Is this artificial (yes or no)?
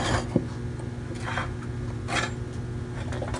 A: no